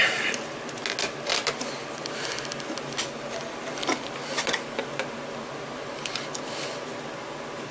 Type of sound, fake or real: real